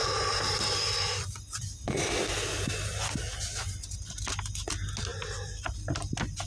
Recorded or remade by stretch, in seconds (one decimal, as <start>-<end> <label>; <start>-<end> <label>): 0.0-6.5 recorded